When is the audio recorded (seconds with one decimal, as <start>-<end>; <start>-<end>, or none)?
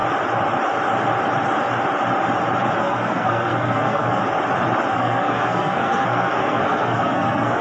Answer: 0.0-2.8; 4.2-4.9